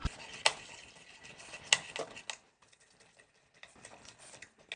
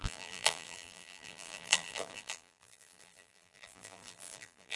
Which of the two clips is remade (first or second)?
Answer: second